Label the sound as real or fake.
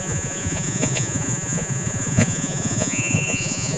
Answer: fake